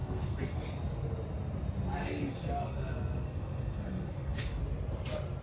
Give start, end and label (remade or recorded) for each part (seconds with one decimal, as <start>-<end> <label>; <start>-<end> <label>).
0.0-0.6 remade; 0.6-2.0 recorded; 2.0-4.6 remade; 4.6-5.4 recorded